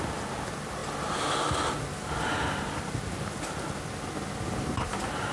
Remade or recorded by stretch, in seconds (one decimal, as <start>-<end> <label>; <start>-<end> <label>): 0.0-5.3 recorded